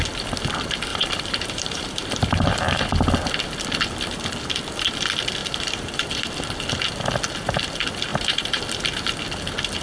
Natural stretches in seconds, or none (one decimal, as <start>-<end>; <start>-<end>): 0.0-0.9; 2.8-5.4; 6.3-8.1; 8.6-9.8